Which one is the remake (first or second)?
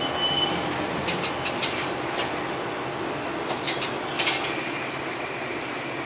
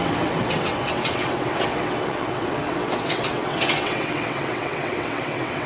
second